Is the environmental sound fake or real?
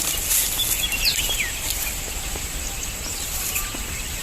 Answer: real